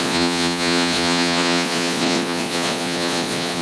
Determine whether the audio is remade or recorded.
remade